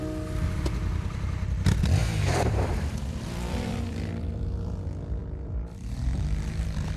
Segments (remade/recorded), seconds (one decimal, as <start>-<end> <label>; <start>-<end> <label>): 0.0-2.0 recorded; 2.0-4.3 remade; 4.3-7.0 recorded